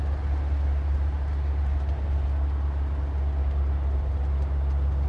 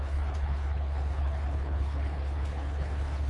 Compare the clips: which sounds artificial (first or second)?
second